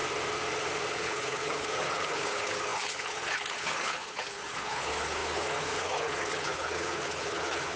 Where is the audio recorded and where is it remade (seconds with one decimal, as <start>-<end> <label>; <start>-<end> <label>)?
0.0-0.9 recorded; 0.9-7.8 remade